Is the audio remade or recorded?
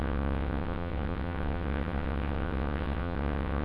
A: remade